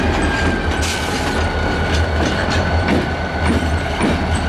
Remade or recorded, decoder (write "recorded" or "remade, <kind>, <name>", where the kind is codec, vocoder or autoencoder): recorded